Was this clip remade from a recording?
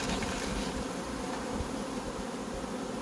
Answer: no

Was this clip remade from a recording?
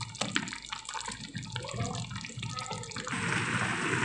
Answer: no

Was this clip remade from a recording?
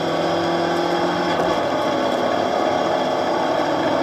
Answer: no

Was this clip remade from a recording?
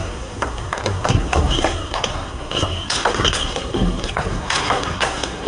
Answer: yes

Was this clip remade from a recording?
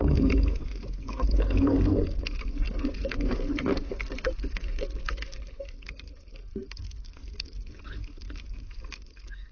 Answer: yes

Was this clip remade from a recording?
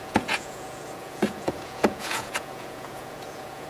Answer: yes